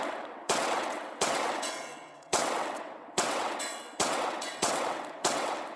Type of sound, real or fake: fake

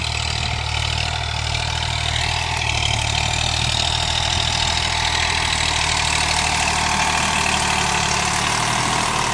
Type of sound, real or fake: real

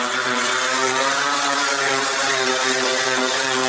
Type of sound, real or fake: fake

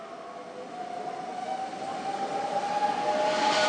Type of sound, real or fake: real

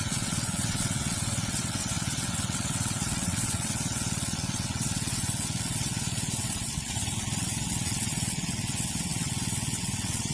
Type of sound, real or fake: fake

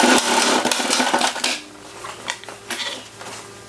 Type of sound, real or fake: real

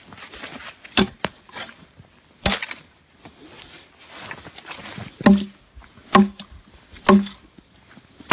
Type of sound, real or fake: real